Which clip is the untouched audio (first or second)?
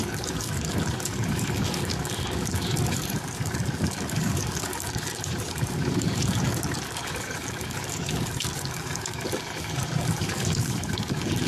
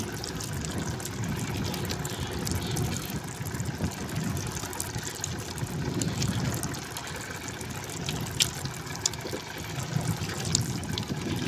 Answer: second